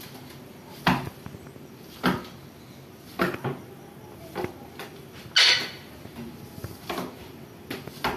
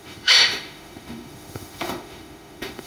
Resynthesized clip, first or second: second